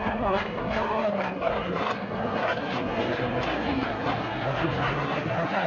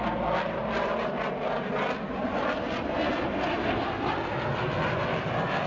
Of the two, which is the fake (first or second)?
first